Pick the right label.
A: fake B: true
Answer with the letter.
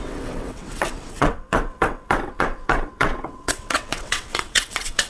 A